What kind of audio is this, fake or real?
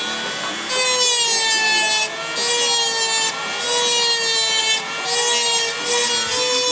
real